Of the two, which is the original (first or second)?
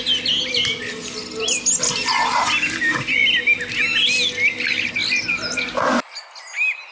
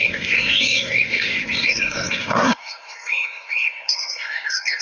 first